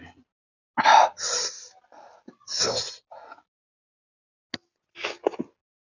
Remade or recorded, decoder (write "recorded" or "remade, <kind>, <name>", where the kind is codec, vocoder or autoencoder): recorded